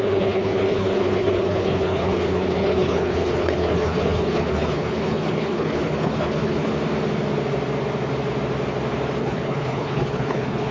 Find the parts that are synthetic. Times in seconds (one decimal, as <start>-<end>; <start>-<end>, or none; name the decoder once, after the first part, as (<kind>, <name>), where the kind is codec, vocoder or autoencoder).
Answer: 0.0-6.7 (codec, HILCodec); 9.2-10.7